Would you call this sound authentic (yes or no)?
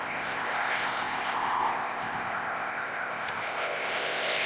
no